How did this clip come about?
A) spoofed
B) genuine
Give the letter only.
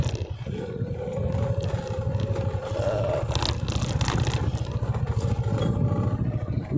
B